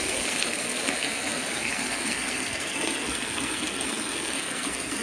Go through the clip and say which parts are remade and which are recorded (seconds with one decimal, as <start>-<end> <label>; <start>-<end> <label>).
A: 0.0-5.0 remade